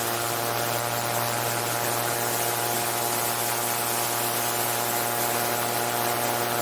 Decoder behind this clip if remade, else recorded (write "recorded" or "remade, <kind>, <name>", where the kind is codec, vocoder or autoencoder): recorded